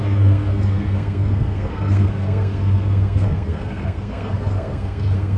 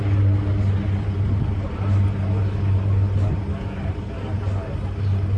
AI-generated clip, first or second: first